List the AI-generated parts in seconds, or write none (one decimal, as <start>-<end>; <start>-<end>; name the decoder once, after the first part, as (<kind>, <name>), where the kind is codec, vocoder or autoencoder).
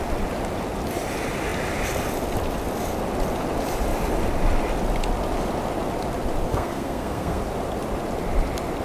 6.5-7.4 (codec, SNAC)